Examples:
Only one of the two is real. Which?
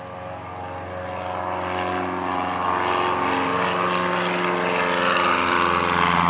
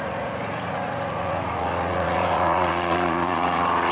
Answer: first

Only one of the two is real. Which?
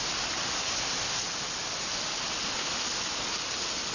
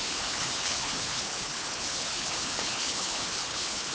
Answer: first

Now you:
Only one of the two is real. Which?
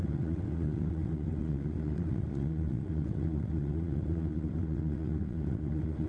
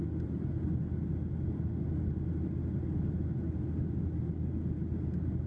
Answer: second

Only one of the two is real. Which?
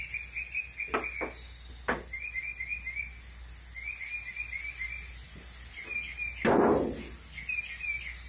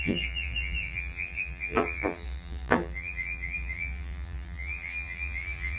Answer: first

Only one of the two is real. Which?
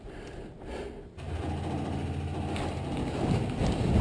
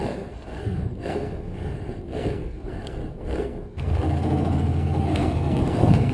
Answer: first